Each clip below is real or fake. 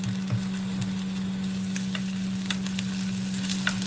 real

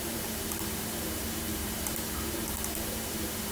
fake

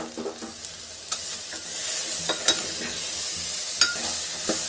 real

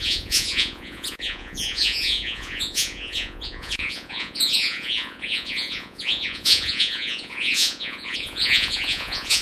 fake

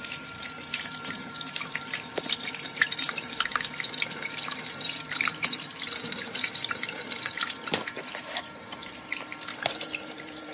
fake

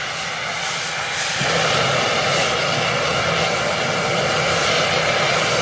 real